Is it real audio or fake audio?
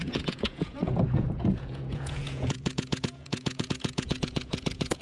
fake